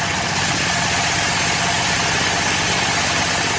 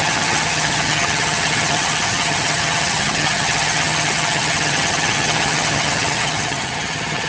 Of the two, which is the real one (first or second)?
first